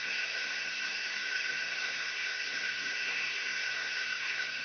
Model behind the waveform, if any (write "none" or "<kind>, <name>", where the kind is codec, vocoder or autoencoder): codec, SNAC